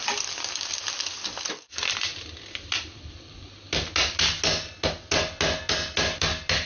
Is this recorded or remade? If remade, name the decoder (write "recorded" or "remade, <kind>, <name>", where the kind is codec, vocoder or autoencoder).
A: recorded